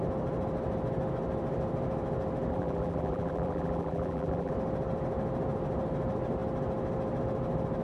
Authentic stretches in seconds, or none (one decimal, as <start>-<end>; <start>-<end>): 0.0-2.5; 4.5-7.8